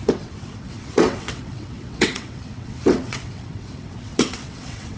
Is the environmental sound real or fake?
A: fake